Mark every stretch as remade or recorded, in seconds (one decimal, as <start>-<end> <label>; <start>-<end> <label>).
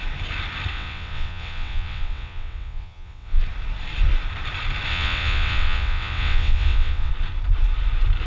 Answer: 0.0-0.7 recorded; 0.7-3.4 remade; 3.4-4.9 recorded; 4.9-7.1 remade; 7.1-8.3 recorded